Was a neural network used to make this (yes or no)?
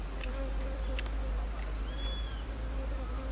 no